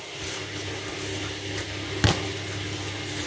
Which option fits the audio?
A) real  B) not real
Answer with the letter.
A